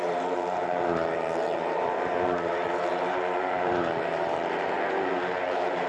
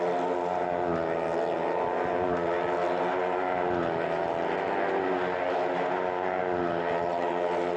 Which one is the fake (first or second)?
first